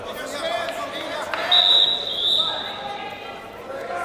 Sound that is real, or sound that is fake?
real